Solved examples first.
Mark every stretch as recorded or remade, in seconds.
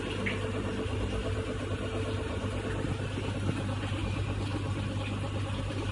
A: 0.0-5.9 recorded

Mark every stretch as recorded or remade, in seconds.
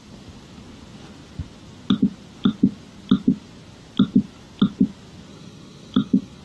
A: 0.0-5.3 recorded; 5.3-6.4 remade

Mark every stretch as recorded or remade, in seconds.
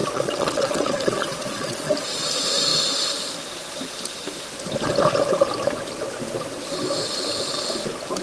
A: 0.0-1.9 remade; 1.9-8.2 recorded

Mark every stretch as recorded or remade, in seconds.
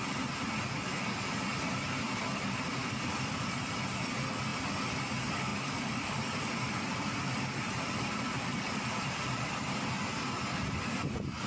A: 0.0-0.9 recorded; 0.9-1.5 remade; 1.5-2.8 recorded; 2.8-3.9 remade; 3.9-4.5 recorded; 4.5-5.0 remade; 5.0-5.5 recorded; 5.5-9.5 remade; 9.5-11.5 recorded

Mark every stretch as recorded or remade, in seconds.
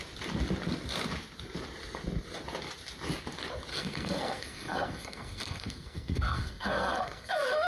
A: 0.0-3.7 recorded; 3.7-7.7 remade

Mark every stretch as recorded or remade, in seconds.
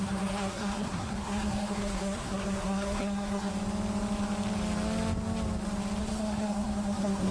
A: 0.0-3.5 remade; 3.5-6.0 recorded; 6.0-7.3 remade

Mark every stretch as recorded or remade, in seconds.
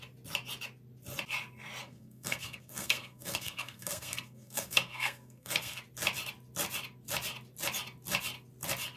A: 0.0-1.8 recorded; 1.8-5.8 remade; 5.8-9.0 recorded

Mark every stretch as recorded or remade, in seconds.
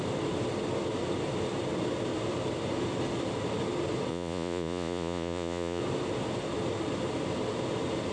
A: 0.0-4.1 recorded; 4.1-5.8 remade; 5.8-8.1 recorded